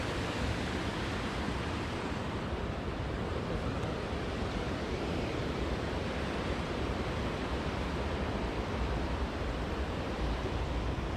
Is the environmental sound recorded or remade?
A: remade